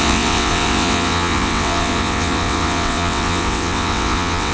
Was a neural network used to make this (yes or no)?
yes